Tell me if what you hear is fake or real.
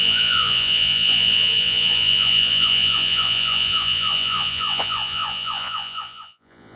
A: fake